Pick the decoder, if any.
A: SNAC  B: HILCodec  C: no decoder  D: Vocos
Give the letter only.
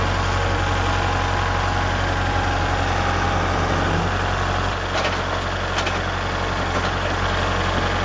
C